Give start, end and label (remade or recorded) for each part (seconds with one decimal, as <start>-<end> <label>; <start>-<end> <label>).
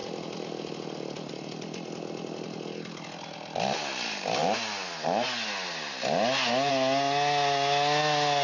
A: 0.0-8.4 recorded